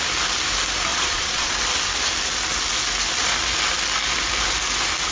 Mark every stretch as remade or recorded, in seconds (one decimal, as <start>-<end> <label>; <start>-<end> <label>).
0.0-0.9 recorded; 0.9-1.6 remade; 1.6-5.1 recorded